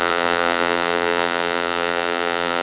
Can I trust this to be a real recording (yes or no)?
no